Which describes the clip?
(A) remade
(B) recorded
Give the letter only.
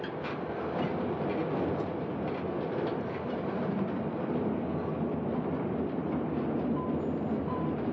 B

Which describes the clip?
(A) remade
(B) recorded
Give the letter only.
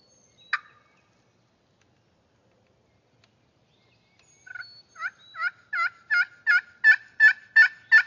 B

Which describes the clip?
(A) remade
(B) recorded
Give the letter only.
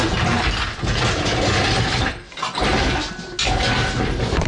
B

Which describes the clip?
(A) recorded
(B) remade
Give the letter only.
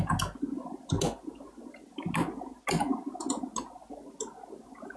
A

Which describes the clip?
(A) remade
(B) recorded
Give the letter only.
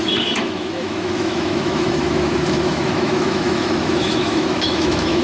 A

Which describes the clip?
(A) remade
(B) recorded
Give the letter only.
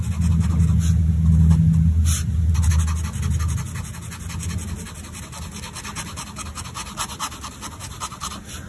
B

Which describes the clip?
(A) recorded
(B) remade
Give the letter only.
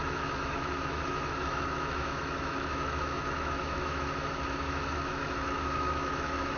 B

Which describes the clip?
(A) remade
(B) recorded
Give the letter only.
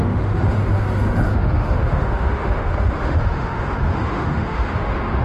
A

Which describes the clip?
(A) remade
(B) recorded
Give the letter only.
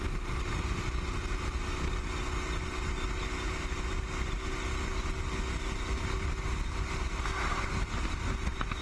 B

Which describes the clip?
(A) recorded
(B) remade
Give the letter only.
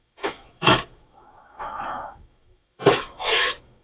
B